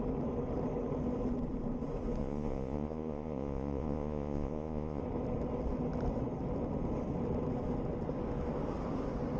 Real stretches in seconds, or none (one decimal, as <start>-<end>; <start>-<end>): 0.0-2.2; 5.0-9.4